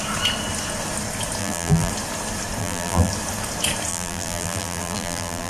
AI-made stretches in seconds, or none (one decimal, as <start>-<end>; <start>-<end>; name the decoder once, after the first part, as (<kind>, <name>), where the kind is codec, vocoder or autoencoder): 1.4-1.9 (vocoder, BigVGAN v2); 2.6-3.1; 3.9-5.5